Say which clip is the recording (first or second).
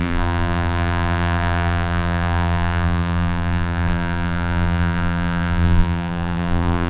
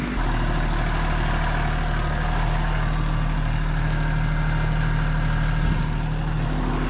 second